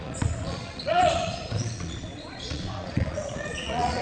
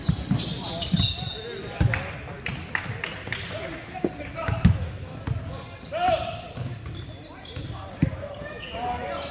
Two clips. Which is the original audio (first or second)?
second